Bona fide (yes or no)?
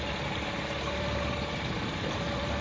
no